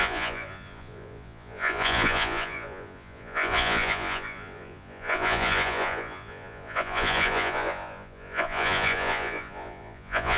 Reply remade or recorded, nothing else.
remade